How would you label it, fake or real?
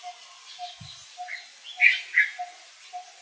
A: real